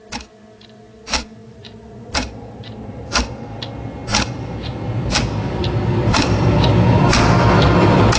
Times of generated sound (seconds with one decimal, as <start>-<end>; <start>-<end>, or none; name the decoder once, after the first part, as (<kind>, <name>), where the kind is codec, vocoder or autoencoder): 1.4-3.3 (vocoder, BigVGAN v2)